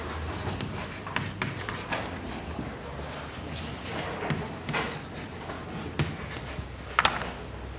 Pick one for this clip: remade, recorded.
recorded